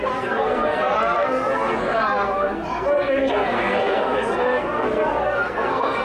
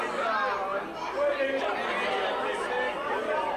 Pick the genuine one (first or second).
second